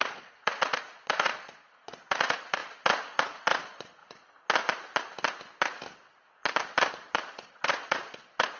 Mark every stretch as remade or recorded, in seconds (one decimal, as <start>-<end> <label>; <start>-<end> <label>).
0.0-4.0 remade; 4.0-6.9 recorded; 6.9-8.6 remade